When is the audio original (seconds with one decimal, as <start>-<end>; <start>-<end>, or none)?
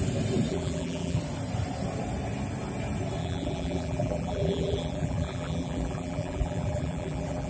0.0-0.5; 1.2-3.2